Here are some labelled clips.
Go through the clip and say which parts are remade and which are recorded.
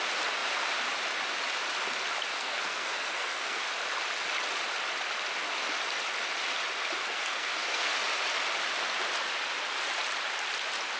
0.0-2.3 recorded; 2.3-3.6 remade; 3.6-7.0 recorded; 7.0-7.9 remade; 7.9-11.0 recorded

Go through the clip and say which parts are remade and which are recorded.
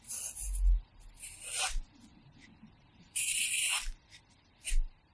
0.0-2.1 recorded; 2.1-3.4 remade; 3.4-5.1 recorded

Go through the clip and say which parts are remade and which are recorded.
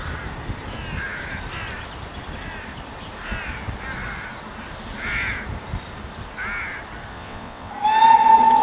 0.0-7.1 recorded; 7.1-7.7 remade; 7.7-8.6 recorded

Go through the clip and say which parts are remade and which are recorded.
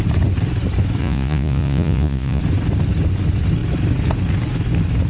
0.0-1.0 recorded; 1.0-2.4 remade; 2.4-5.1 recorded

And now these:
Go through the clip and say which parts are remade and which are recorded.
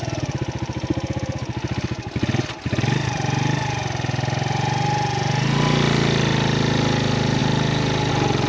0.0-8.5 recorded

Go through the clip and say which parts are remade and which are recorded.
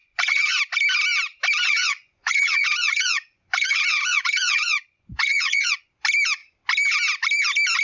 0.0-0.6 remade; 0.6-1.6 recorded; 1.6-5.9 remade; 5.9-7.8 recorded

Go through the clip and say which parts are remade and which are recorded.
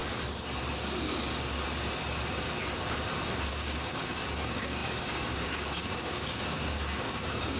0.0-3.5 recorded; 3.5-7.6 remade